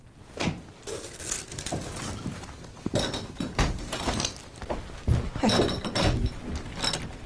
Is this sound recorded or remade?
recorded